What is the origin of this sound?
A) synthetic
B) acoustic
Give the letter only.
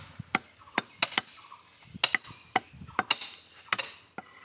B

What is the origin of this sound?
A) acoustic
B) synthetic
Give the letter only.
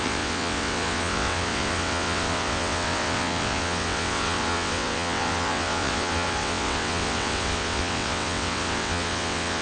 B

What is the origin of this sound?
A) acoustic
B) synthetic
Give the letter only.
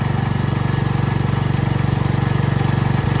A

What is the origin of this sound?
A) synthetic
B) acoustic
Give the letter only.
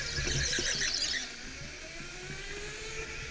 B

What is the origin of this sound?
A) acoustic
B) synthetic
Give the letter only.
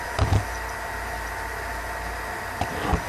A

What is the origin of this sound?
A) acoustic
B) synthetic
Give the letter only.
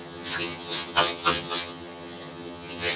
B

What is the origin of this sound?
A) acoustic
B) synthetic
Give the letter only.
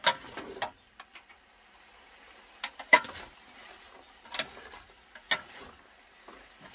A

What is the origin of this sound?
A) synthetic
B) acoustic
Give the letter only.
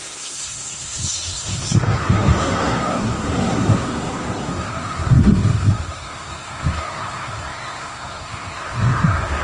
A